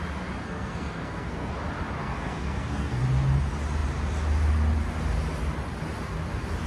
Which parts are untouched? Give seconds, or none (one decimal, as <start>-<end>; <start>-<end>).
0.0-0.4; 1.5-2.0; 3.0-6.7